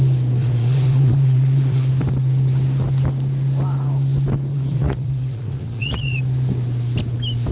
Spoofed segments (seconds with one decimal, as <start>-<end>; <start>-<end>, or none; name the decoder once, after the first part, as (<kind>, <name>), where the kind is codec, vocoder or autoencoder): 0.4-1.9 (vocoder, Vocos); 4.5-6.2

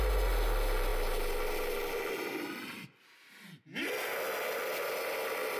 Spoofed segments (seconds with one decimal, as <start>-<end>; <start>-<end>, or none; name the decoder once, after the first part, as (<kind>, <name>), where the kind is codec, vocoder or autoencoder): none

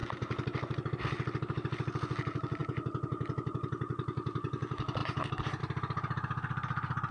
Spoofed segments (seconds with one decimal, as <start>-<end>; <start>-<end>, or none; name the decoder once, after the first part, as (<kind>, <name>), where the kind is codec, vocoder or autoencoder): none

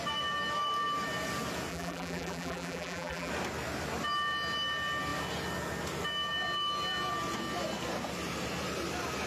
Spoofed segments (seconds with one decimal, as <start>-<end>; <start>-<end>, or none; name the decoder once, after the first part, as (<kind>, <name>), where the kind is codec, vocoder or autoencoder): 1.7-3.3 (vocoder, BigVGAN v2)

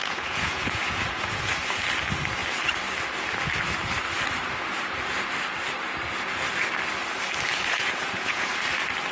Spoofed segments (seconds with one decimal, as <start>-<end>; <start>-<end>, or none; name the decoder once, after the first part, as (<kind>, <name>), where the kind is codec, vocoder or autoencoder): 0.0-1.4 (vocoder, Vocos); 7.5-8.5